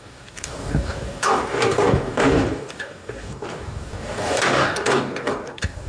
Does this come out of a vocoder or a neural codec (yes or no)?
yes